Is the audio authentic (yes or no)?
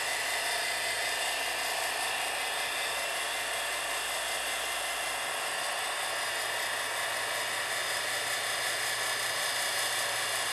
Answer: yes